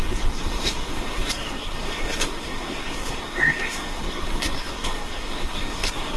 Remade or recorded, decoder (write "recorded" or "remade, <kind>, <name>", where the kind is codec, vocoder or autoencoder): remade, codec, SNAC